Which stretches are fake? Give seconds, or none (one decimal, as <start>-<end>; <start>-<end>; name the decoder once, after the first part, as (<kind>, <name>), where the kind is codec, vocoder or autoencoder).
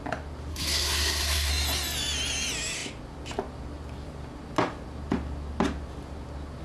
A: 0.5-1.5 (codec, SNAC)